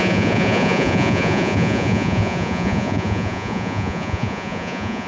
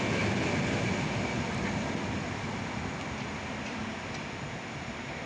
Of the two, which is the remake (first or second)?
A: first